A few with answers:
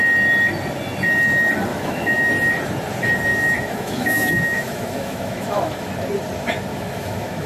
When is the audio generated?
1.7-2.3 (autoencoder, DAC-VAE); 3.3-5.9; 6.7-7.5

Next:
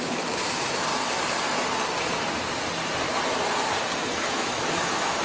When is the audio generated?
0.0-0.9 (autoencoder, DAC-VAE); 4.0-5.2

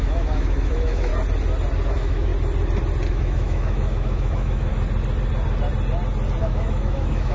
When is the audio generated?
0.0-1.1 (autoencoder, DAC-VAE); 1.9-2.3; 3.1-4.7; 6.4-7.3